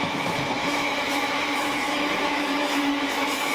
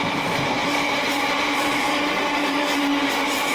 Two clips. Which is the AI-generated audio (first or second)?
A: first